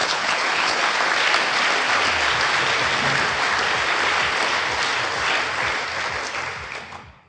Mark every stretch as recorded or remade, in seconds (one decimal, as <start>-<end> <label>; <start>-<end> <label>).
0.0-0.8 remade; 0.8-7.3 recorded